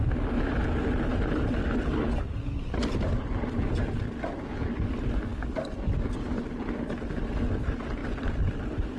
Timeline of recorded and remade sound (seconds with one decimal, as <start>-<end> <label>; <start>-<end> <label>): 0.0-8.0 recorded; 8.0-9.0 remade

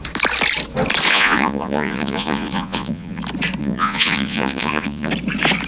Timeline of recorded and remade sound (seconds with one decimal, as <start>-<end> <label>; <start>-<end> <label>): 0.0-1.1 recorded; 1.1-3.2 remade; 3.2-3.6 recorded; 3.6-5.1 remade; 5.1-5.7 recorded

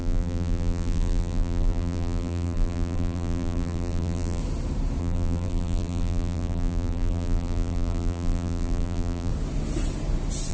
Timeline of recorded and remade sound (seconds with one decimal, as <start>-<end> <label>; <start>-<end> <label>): 0.0-4.4 remade; 4.4-5.0 recorded; 5.0-9.3 remade; 9.3-10.5 recorded

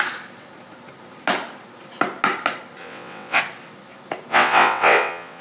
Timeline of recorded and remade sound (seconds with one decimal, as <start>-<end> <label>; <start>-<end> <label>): 0.0-2.8 recorded; 2.8-3.4 remade; 3.4-4.3 recorded; 4.3-5.4 remade

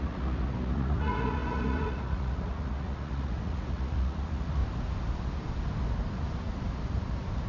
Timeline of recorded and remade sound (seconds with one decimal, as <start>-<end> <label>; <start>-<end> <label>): 0.0-4.6 remade; 4.6-7.5 recorded

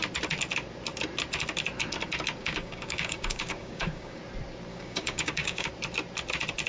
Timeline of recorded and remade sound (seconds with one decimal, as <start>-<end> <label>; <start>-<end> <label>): 0.0-2.4 recorded; 2.4-4.2 remade; 4.2-4.7 recorded; 4.7-5.7 remade; 5.7-6.7 recorded

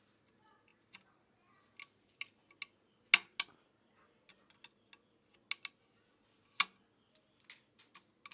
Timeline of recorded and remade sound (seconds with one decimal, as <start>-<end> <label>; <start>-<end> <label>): 0.0-8.3 recorded

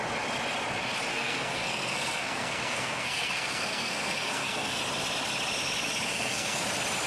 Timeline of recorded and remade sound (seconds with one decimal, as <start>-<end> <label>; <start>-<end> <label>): 0.0-1.1 recorded; 1.1-4.8 remade; 4.8-6.1 recorded; 6.1-6.6 remade; 6.6-7.1 recorded